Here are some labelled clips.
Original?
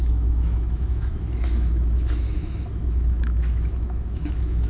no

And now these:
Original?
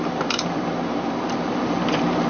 no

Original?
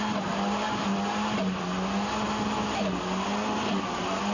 yes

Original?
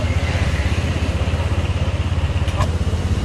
yes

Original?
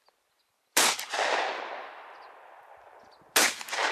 yes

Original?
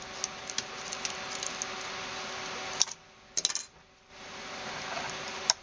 yes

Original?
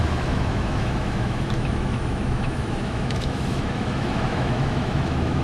no